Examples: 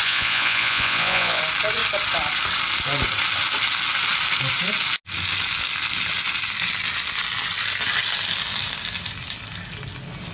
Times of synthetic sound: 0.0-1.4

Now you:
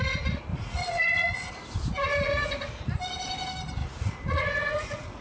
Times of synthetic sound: 0.5-1.5; 3.8-5.2

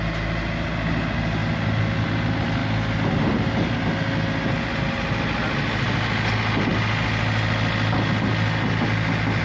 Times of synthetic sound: none